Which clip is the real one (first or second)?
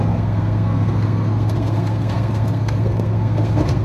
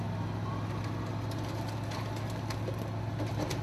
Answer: second